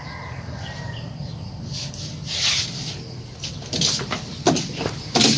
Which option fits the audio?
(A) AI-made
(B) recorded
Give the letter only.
A